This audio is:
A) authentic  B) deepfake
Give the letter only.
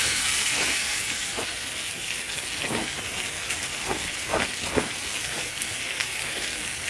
B